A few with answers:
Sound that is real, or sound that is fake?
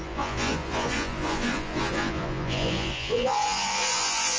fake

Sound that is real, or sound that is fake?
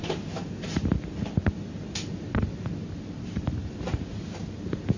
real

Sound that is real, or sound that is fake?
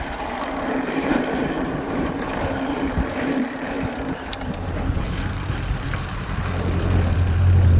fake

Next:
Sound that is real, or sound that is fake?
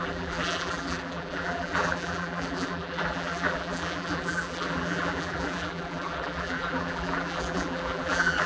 fake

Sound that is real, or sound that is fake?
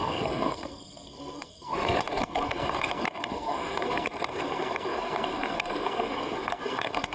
fake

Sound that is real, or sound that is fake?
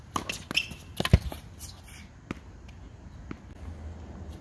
real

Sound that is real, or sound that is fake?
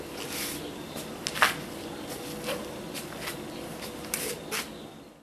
real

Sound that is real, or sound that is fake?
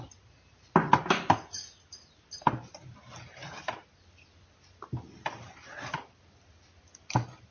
real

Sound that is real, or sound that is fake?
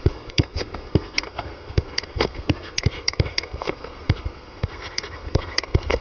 fake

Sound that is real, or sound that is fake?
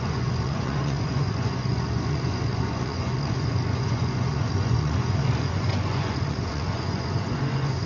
fake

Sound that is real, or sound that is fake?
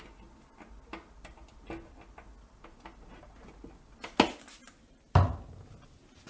real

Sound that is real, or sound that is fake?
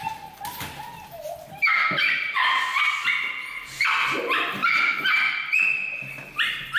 real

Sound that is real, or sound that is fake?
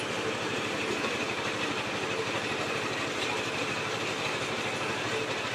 real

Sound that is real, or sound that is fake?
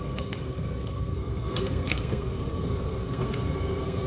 fake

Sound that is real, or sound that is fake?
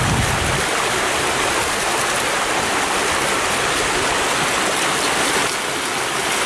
real